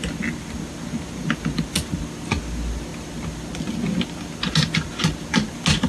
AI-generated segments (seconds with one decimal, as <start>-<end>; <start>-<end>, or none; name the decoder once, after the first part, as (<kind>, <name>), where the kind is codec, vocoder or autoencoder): none

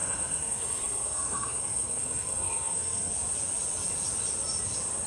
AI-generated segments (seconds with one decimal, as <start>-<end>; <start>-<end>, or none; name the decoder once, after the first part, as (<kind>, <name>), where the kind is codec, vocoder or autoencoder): 0.0-3.1 (codec, SNAC)

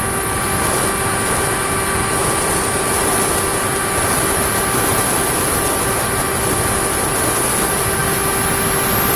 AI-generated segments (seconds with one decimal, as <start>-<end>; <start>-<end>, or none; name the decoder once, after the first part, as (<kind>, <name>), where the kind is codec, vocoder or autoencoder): none

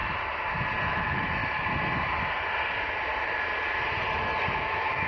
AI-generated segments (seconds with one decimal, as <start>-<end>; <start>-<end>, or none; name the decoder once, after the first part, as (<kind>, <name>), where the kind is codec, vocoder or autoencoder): 0.9-1.4 (autoencoder, DAC-VAE); 4.5-5.1

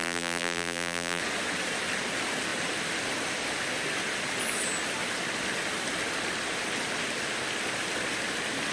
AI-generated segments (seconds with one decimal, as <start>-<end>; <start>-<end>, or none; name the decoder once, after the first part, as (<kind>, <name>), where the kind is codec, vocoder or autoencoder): 0.0-1.2 (vocoder, BigVGAN v2)

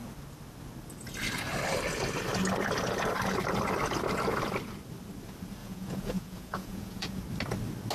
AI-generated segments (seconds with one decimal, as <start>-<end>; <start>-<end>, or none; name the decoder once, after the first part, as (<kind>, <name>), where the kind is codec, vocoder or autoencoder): 5.6-7.2 (vocoder, Vocos)

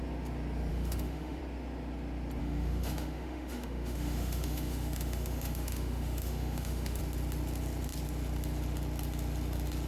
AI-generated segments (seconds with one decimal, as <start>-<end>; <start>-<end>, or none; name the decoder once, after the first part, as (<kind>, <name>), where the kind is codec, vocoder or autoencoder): 0.7-1.4 (autoencoder, DAC-VAE); 2.4-7.0

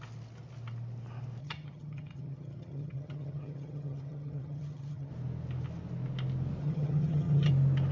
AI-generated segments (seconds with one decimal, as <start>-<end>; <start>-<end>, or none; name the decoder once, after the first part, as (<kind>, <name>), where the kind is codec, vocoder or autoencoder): 1.4-5.1 (vocoder, HiFi-GAN); 6.6-7.5